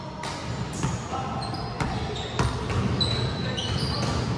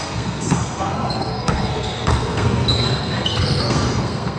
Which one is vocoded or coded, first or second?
second